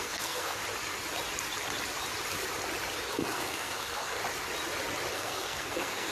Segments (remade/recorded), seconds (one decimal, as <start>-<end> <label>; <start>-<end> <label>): 0.0-0.6 remade; 0.6-3.1 recorded; 3.1-4.2 remade; 4.2-5.1 recorded; 5.1-6.1 remade